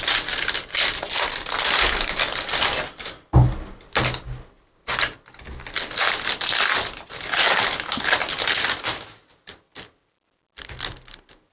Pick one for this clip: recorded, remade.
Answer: recorded